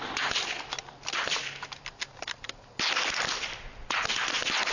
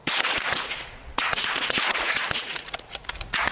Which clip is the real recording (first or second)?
first